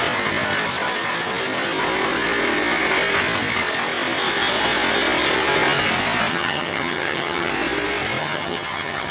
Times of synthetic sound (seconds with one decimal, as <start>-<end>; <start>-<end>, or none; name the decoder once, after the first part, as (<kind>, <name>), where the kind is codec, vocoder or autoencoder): 6.3-7.5 (vocoder, HiFi-GAN); 8.2-9.1